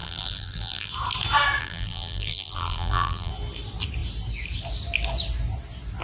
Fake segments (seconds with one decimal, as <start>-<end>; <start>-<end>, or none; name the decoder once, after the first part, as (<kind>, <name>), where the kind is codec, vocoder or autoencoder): 0.0-0.9 (vocoder, BigVGAN v2); 1.6-3.3

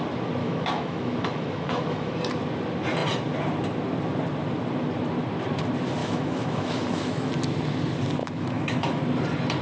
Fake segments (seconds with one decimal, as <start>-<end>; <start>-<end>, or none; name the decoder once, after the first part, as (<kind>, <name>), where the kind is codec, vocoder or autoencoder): 0.4-2.1 (autoencoder, DAC-VAE); 6.0-7.3; 8.2-9.0

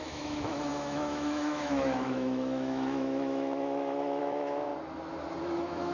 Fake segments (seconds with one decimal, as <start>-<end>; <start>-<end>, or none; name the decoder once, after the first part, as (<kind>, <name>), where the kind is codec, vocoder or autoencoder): 0.0-4.7 (autoencoder, DAC-VAE); 5.4-5.9